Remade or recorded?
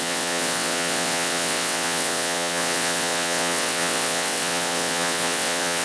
remade